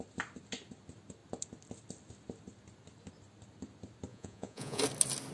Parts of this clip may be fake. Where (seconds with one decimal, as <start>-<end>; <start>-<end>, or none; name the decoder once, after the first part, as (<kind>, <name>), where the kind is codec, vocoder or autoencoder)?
4.1-4.8 (vocoder, Vocos)